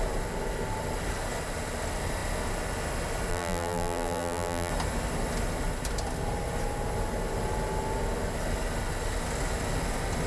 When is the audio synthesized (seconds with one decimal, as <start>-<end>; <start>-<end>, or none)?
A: 3.3-4.7